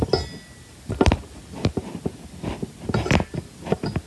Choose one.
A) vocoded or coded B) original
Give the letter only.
B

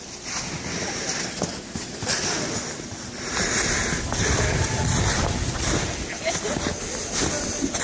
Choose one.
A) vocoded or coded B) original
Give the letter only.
B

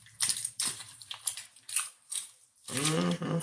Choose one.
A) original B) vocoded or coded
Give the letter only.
B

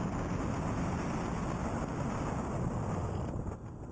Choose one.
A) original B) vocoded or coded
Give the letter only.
A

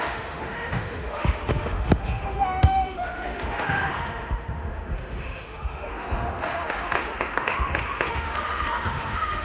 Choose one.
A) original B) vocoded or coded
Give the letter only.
B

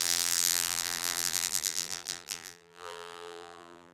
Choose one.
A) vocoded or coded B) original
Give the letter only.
A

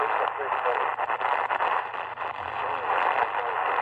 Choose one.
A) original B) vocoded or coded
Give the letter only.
A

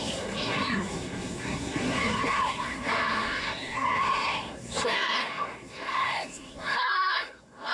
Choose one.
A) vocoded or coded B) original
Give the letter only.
A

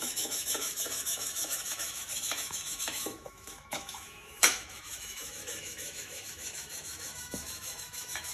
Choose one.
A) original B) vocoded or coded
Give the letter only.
B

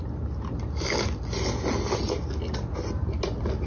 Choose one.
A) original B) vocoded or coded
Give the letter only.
A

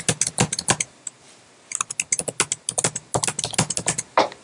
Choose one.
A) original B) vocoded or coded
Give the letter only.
A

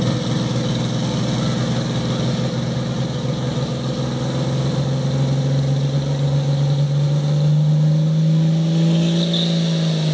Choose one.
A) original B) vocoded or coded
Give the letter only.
A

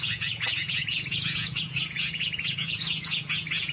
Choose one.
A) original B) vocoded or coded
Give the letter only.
B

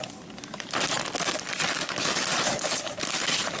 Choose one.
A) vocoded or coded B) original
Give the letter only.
B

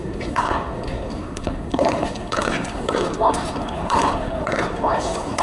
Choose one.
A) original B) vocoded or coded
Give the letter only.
B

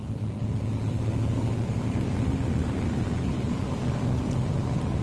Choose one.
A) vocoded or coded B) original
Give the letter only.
B